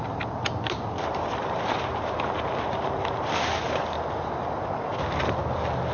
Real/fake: real